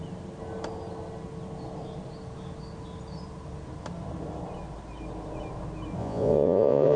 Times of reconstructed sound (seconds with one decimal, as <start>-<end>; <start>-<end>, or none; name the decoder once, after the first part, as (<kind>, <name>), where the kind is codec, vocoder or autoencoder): 6.0-7.0 (vocoder, Vocos)